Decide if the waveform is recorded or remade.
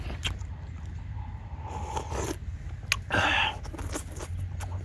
recorded